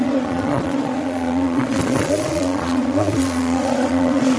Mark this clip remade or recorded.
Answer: remade